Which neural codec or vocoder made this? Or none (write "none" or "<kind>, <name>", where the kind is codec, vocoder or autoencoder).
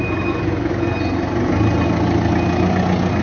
none